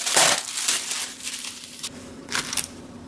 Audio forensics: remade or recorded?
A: recorded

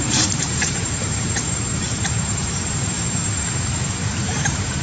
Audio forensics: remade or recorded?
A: remade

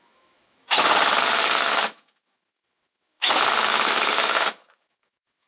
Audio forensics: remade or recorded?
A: remade